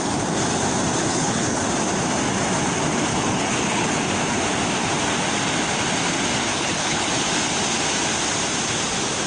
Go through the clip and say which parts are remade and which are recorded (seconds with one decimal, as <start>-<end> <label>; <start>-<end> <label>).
0.0-1.1 recorded; 1.1-1.6 remade; 1.6-3.1 recorded; 3.1-4.0 remade; 4.0-6.5 recorded; 6.5-7.1 remade; 7.1-9.3 recorded

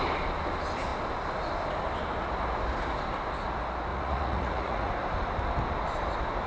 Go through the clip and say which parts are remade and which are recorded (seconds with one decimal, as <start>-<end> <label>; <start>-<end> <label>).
0.0-3.9 recorded; 3.9-4.9 remade; 4.9-6.5 recorded

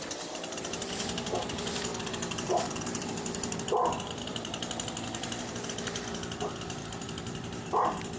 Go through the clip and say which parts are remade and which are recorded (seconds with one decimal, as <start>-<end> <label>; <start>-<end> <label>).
0.0-1.9 recorded; 1.9-5.4 remade; 5.4-8.2 recorded

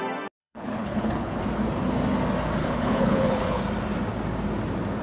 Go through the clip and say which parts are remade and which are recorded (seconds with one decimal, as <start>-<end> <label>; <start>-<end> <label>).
0.0-0.4 recorded; 0.4-1.4 remade; 1.4-2.6 recorded; 2.6-3.6 remade; 3.6-5.0 recorded

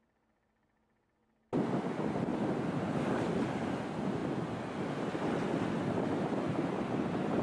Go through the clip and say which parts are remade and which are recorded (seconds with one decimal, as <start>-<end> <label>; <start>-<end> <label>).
0.0-7.4 recorded

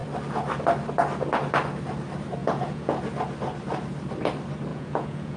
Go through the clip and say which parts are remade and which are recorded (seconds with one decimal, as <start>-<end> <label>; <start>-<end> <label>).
0.0-2.4 recorded; 2.4-3.0 remade; 3.0-4.7 recorded; 4.7-5.4 remade